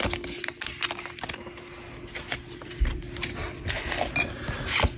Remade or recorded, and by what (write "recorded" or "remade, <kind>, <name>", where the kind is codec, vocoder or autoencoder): recorded